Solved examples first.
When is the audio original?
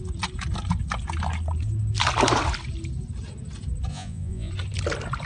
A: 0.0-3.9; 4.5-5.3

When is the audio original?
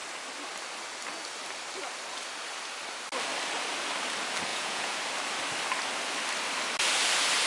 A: 0.0-4.5; 5.0-7.5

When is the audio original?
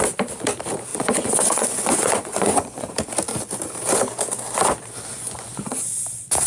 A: 0.0-0.9; 2.9-5.1; 5.9-6.5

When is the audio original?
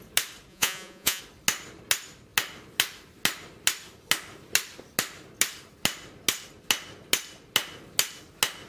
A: 0.0-0.5; 1.2-8.7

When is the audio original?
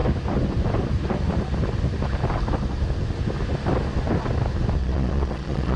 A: 0.0-4.8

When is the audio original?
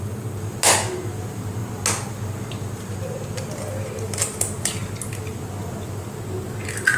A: 0.0-7.0